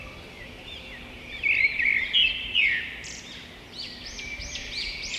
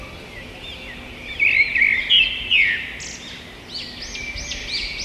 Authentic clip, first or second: second